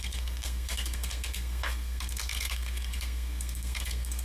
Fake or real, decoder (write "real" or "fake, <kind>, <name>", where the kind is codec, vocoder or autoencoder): fake, codec, SNAC